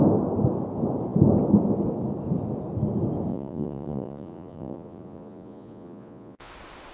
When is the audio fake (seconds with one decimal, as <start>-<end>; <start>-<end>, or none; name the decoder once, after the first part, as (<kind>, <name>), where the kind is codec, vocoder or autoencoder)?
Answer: 3.3-6.5 (vocoder, Vocos)